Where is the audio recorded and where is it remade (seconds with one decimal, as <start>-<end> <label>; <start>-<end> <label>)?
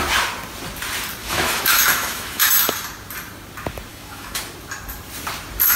0.0-1.2 recorded; 1.2-2.5 remade; 2.5-3.9 recorded; 3.9-4.4 remade; 4.4-5.8 recorded